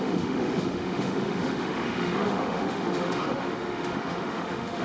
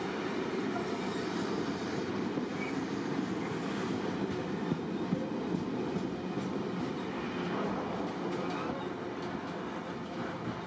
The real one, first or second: second